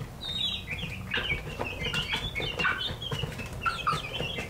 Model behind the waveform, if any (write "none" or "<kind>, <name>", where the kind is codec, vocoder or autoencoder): none